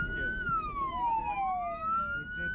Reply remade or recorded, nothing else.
recorded